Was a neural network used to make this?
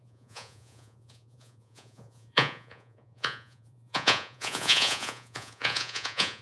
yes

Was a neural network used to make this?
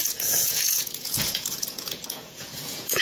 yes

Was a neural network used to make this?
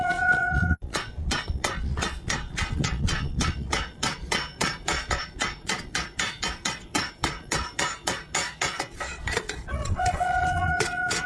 yes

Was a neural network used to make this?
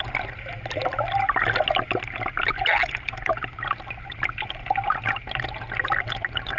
no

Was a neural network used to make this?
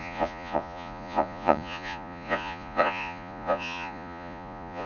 yes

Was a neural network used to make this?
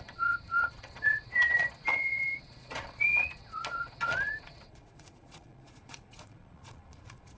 yes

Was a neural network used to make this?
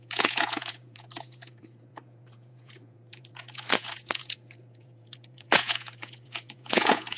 yes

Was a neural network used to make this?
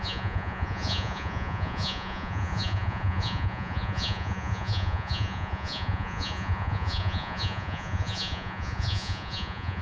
yes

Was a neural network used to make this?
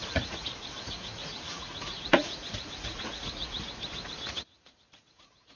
yes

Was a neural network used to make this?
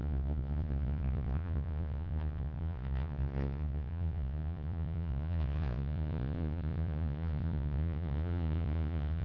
yes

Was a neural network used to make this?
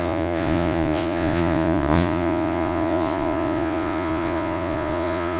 yes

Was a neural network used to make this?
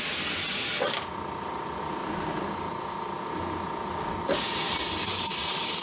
no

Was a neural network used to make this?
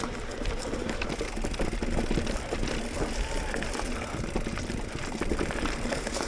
no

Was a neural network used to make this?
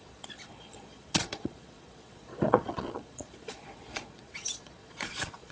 yes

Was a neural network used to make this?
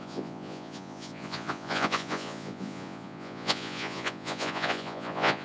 yes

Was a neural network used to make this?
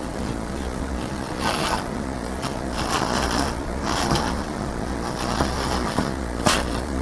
yes